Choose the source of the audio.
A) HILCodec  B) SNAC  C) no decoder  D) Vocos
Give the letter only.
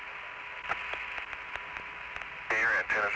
C